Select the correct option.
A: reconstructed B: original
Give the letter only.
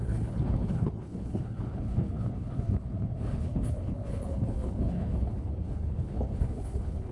A